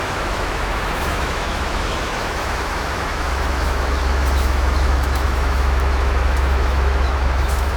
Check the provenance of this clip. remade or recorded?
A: remade